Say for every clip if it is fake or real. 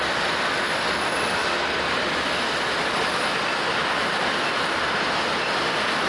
real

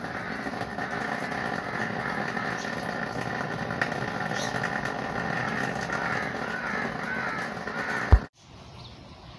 real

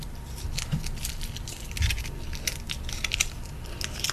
real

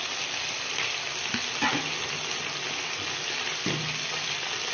real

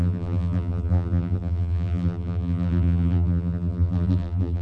fake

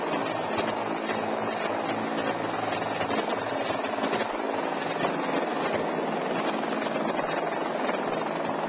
real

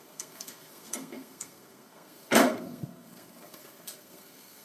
fake